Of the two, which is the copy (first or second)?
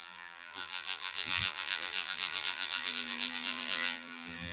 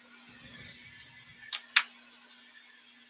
first